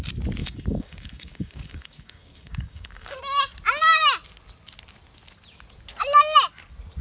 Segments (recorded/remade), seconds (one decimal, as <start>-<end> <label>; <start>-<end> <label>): 0.0-0.4 recorded; 0.4-3.2 remade; 3.2-7.0 recorded